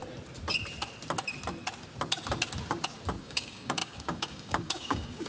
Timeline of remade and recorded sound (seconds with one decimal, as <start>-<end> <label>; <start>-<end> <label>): 0.0-3.2 recorded; 3.2-5.3 remade